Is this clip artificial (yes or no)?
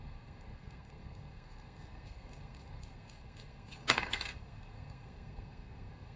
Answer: yes